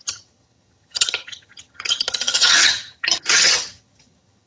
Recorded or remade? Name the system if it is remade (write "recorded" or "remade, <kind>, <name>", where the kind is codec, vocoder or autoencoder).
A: remade, vocoder, HiFi-GAN